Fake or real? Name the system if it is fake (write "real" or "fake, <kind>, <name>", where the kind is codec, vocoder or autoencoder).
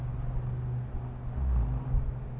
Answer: real